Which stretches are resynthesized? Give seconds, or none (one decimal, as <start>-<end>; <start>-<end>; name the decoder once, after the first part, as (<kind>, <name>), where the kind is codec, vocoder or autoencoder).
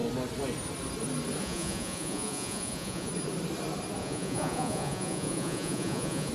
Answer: 1.4-3.1 (vocoder, Vocos); 4.0-6.3